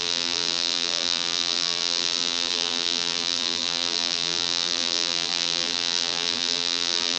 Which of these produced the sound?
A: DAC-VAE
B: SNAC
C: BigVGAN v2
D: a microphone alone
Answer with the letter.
C